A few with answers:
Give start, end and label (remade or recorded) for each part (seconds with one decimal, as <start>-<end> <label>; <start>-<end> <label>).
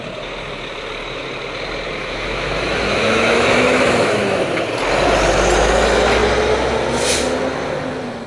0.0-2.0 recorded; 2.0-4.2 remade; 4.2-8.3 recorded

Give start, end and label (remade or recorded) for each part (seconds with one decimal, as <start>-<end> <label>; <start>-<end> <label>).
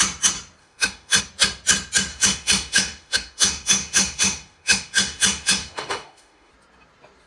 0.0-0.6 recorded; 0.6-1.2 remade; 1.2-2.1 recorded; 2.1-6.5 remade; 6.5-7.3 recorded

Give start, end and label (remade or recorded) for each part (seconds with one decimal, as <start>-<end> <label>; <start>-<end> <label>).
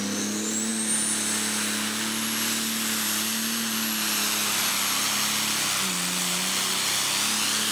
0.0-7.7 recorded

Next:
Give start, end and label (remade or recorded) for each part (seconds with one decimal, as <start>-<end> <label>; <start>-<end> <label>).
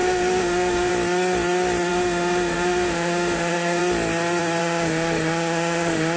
0.0-0.9 remade; 0.9-1.9 recorded; 1.9-3.8 remade; 3.8-4.6 recorded; 4.6-6.2 remade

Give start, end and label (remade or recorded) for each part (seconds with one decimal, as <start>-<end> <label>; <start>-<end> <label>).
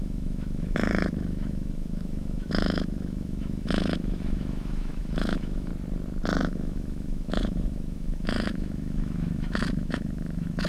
0.0-5.7 remade; 5.7-6.4 recorded; 6.4-10.7 remade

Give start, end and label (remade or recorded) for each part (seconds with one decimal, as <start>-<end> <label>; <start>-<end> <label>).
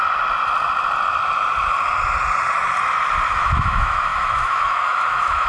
0.0-3.3 recorded; 3.3-5.5 remade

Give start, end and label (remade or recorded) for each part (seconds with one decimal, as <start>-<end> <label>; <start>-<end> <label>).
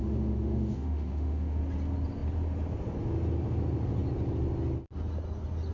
0.0-1.6 remade; 1.6-5.7 recorded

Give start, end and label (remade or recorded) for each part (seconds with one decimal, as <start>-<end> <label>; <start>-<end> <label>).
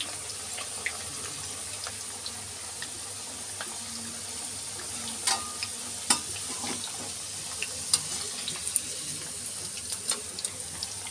0.0-11.1 recorded